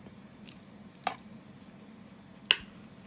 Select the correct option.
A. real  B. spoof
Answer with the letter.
A